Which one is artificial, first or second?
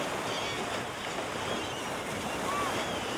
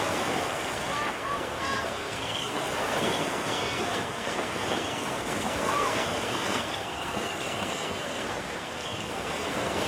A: second